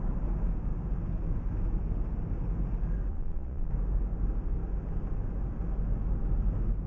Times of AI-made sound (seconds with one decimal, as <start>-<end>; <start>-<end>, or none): 3.1-3.7